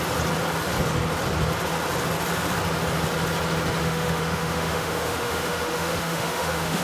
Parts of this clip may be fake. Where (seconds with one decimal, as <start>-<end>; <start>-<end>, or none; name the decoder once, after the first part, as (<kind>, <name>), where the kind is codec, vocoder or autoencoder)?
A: 3.8-6.8 (autoencoder, DAC-VAE)